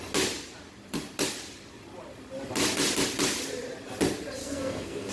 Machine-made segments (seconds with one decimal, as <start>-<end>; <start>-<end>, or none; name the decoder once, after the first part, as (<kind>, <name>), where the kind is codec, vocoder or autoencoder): 4.4-5.1 (codec, SNAC)